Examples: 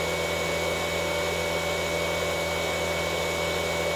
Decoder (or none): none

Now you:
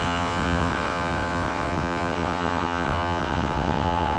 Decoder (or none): vocoder, WaveNeXt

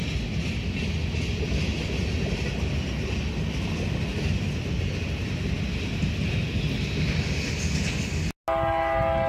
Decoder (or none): none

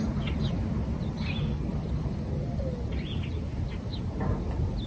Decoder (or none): none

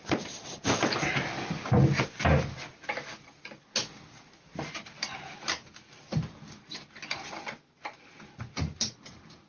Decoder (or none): none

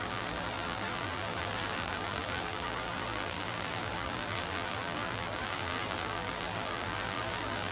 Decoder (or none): vocoder, BigVGAN v2